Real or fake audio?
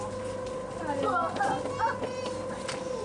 real